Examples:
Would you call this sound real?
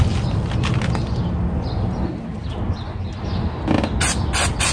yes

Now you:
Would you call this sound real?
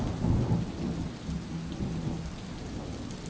yes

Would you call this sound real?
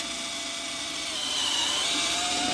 yes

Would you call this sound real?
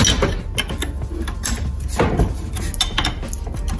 yes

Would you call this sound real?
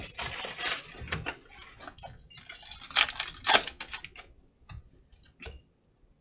yes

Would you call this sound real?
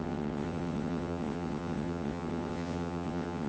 no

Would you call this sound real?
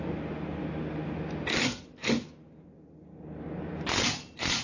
yes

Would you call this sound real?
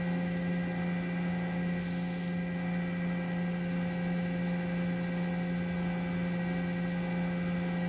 yes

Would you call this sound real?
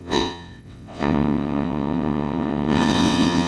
no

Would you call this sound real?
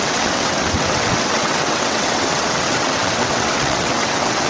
no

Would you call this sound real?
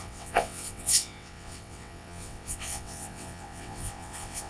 no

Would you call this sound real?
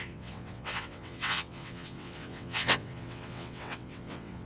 no